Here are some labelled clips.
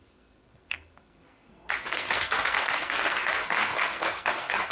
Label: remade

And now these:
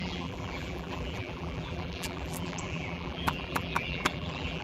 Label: remade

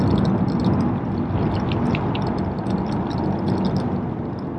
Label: recorded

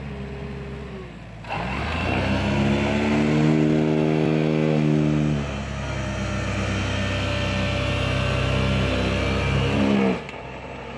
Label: recorded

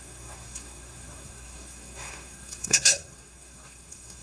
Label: remade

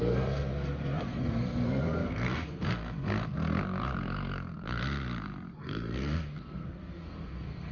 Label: remade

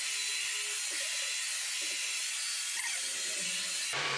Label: recorded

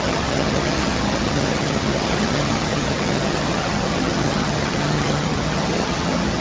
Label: remade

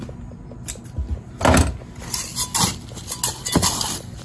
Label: recorded